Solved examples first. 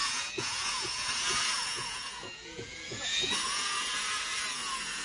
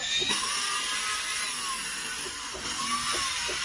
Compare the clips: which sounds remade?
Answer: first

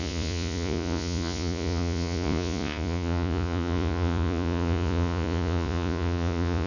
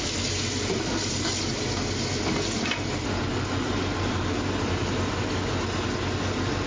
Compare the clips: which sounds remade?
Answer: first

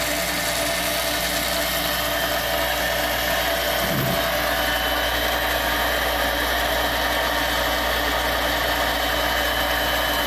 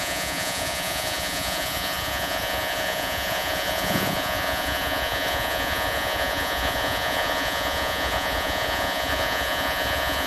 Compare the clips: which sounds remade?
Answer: second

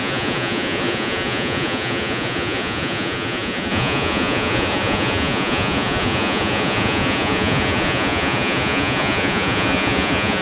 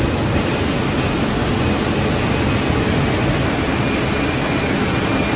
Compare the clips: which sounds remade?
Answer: first